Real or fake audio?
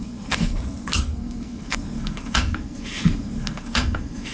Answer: fake